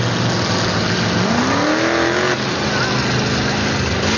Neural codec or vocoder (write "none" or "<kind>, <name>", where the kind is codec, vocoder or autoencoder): none